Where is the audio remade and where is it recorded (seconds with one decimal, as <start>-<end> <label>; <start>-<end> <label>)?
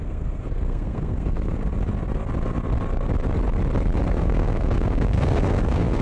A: 0.0-1.7 remade; 1.7-4.1 recorded; 4.1-6.0 remade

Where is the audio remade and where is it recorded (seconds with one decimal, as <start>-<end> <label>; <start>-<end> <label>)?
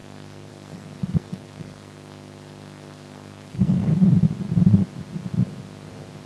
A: 0.0-3.9 remade; 3.9-6.3 recorded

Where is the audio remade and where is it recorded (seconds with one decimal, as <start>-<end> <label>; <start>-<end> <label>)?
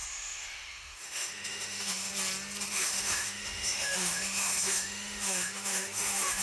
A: 0.0-2.1 remade; 2.1-2.7 recorded; 2.7-6.4 remade